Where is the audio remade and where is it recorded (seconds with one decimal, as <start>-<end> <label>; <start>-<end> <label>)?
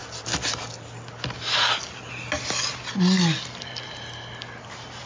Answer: 0.0-5.1 recorded